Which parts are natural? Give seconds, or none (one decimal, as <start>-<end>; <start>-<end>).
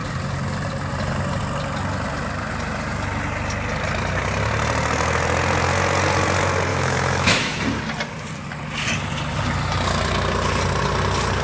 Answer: 0.0-6.7; 7.6-11.4